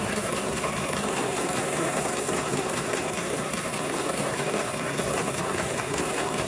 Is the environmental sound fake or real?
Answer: fake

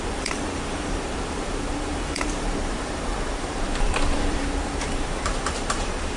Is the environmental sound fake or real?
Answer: fake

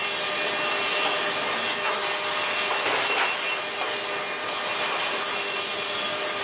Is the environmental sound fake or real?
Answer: real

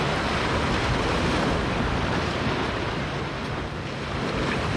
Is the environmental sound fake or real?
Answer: real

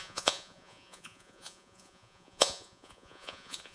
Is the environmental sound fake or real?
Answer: fake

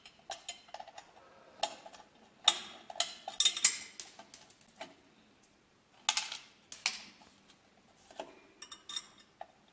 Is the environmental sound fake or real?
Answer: real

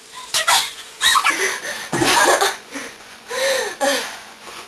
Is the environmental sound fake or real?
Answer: fake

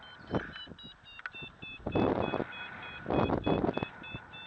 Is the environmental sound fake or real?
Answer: real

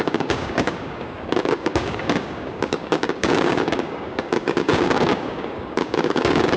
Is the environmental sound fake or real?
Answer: fake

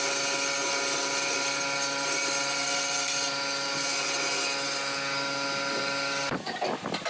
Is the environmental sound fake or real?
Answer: real